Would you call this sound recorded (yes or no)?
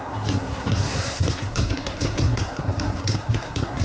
no